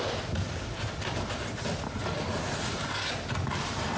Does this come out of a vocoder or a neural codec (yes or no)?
no